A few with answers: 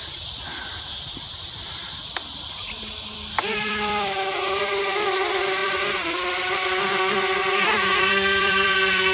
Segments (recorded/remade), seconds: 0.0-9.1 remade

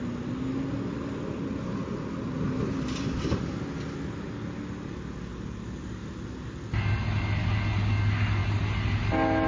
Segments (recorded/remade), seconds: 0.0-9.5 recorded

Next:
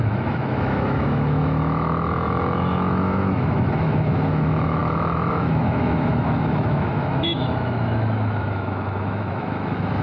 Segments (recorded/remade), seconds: 0.0-10.0 remade